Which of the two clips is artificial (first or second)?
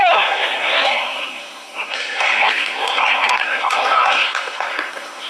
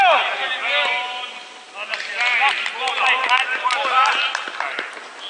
first